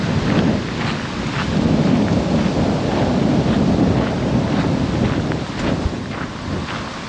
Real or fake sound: real